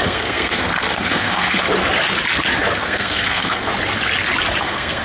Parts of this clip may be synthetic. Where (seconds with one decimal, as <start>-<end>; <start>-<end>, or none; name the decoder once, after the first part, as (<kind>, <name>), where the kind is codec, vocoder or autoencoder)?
0.0-1.7 (codec, SNAC); 2.8-3.7; 4.6-5.0

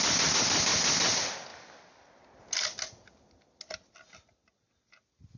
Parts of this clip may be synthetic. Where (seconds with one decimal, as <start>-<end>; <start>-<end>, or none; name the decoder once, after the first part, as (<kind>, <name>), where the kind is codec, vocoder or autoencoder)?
none

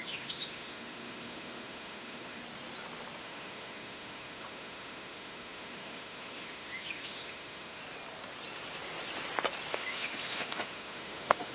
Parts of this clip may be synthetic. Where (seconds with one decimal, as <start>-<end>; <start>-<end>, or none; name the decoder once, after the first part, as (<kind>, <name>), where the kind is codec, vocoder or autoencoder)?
0.0-2.4 (autoencoder, DAC-VAE); 3.2-7.8; 9.7-11.5

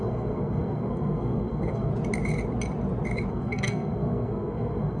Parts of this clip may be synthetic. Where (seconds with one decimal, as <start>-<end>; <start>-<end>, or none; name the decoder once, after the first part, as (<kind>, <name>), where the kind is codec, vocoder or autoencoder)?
0.0-1.9 (codec, SNAC); 3.3-5.0

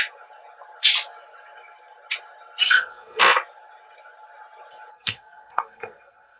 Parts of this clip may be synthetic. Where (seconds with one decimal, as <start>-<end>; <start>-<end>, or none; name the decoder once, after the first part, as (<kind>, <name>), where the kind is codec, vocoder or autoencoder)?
2.6-3.2 (codec, SNAC); 4.9-6.4

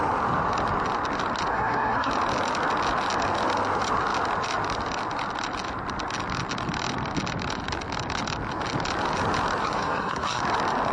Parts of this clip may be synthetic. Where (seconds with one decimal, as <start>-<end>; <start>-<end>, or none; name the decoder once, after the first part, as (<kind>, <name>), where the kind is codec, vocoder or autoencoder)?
1.5-2.1 (codec, SNAC); 9.6-10.4

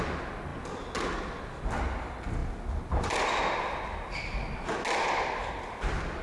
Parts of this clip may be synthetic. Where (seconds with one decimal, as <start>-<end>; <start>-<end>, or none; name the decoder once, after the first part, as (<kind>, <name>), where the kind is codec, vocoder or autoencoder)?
none

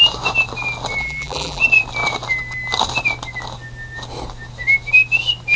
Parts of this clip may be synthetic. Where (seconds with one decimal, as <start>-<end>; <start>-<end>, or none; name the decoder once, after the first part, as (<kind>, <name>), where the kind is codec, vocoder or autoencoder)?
1.0-1.6 (vocoder, BigVGAN v2)